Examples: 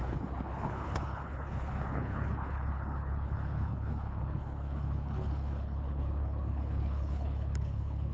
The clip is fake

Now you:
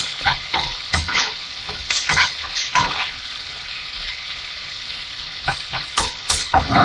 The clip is fake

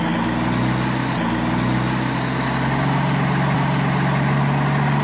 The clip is real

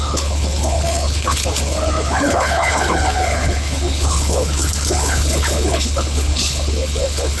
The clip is fake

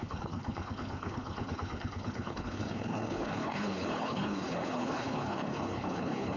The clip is fake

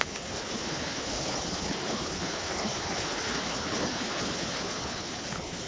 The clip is fake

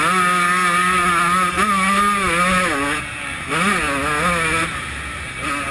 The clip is real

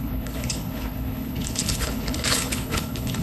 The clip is fake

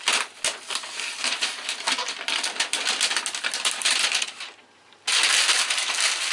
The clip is real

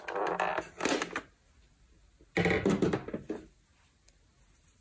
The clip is real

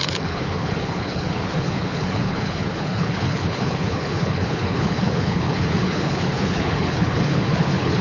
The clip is fake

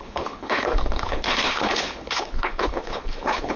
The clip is fake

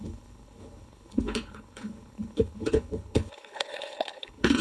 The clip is fake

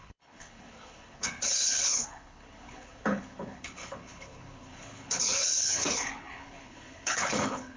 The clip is fake